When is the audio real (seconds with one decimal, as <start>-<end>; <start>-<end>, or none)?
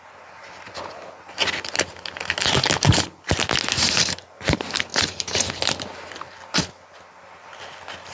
0.0-8.1